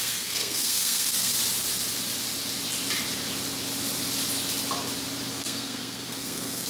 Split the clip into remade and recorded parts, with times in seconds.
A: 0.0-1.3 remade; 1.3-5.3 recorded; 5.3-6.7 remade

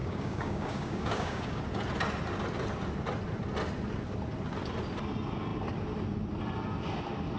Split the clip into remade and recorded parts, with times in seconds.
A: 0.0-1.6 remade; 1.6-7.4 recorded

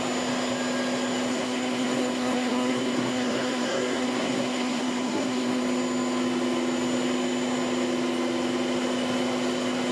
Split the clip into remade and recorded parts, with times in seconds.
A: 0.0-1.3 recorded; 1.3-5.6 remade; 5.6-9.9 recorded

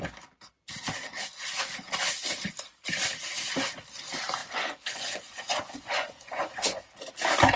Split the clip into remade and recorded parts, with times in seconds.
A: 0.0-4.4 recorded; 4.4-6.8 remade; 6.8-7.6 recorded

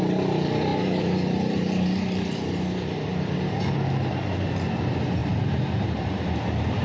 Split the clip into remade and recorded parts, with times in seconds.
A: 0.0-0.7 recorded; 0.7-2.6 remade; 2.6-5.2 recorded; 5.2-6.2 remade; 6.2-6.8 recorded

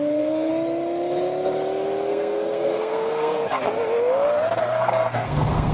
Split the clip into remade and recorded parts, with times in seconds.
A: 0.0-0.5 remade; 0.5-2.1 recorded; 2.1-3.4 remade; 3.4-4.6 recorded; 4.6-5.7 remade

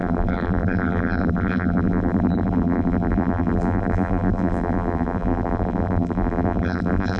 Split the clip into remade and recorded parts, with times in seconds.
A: 0.0-7.2 remade